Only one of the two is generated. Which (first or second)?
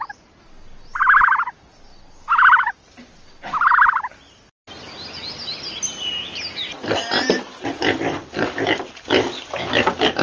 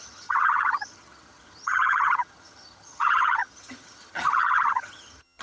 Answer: second